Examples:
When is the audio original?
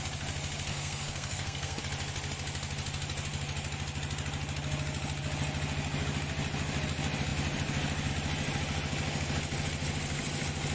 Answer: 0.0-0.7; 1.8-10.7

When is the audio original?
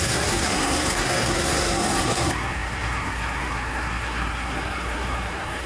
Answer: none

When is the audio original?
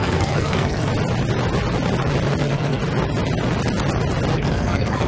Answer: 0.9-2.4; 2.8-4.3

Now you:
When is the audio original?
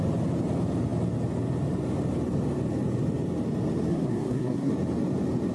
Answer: 0.0-3.9; 4.7-5.5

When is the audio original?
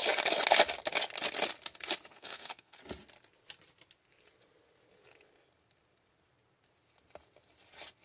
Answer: 0.0-2.1; 2.8-8.0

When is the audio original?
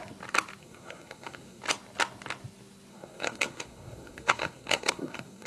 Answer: 0.0-0.6; 1.6-2.9